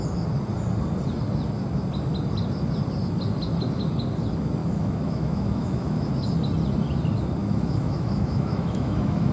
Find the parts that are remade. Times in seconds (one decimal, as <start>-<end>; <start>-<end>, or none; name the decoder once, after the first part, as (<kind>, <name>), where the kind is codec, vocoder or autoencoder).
4.6-6.1 (autoencoder, DAC-VAE); 7.4-9.3